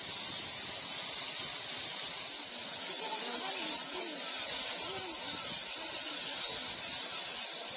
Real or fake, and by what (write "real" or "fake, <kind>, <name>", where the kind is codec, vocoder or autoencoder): real